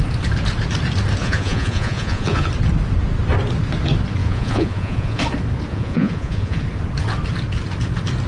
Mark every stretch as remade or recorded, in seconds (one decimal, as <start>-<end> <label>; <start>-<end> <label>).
0.0-1.2 recorded; 1.2-2.5 remade; 2.5-4.2 recorded; 4.2-5.2 remade; 5.2-5.7 recorded; 5.7-6.6 remade; 6.6-8.3 recorded